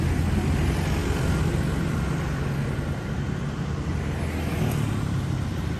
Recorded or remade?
recorded